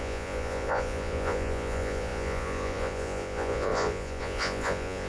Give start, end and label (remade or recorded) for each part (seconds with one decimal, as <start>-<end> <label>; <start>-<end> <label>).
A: 0.0-5.1 remade